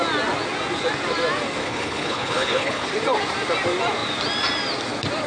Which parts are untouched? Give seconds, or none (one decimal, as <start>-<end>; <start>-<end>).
0.0-1.6; 2.9-5.3